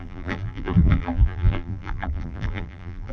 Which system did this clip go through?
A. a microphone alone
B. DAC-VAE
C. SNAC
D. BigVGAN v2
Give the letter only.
D